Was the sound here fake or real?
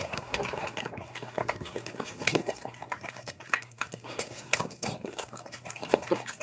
fake